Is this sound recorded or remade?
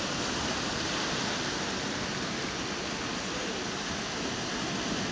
recorded